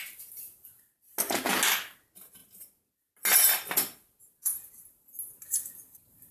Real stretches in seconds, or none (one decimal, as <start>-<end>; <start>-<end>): 0.0-6.3